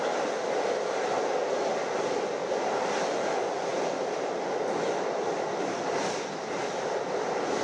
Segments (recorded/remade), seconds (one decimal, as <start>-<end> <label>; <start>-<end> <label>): 0.0-7.6 recorded